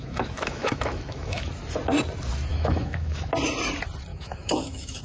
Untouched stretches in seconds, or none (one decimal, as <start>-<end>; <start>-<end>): 1.5-2.5; 3.3-4.1